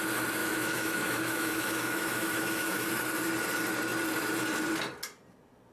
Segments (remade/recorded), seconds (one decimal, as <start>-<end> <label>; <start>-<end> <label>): 0.0-0.4 recorded; 0.4-2.9 remade; 2.9-5.7 recorded